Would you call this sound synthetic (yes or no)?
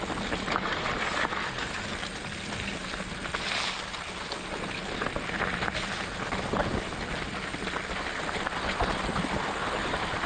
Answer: no